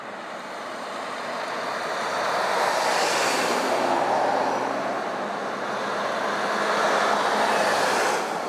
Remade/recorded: recorded